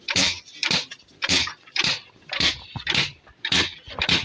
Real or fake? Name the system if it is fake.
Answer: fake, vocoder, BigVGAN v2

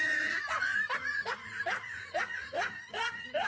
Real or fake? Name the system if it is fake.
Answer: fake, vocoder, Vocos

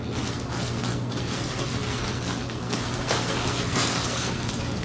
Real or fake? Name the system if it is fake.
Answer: fake, codec, SNAC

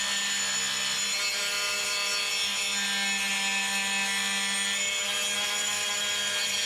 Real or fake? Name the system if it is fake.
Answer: real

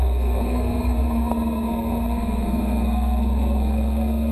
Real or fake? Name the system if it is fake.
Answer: fake, codec, SNAC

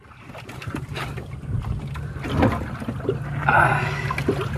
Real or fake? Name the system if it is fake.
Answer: real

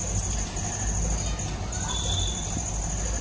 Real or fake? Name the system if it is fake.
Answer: real